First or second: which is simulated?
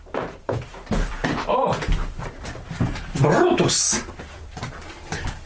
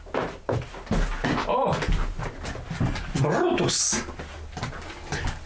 first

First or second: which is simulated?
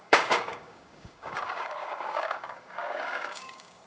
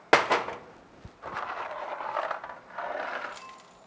first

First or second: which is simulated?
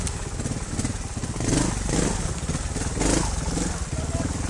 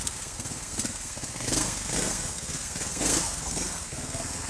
second